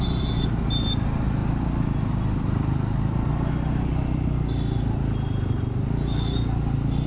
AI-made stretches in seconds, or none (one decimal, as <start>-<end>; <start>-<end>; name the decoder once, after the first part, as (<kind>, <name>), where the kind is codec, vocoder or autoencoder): none